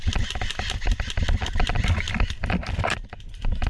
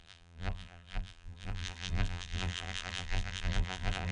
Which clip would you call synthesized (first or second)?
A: second